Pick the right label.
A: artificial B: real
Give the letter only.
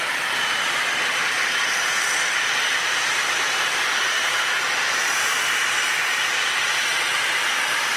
A